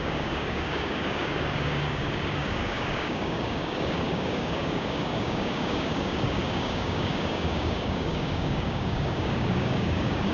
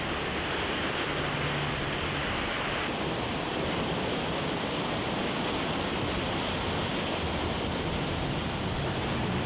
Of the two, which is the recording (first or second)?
second